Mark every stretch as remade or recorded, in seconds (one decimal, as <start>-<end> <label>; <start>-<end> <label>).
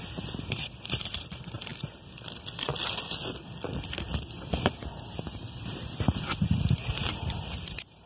0.0-1.7 remade; 1.7-5.5 recorded; 5.5-8.1 remade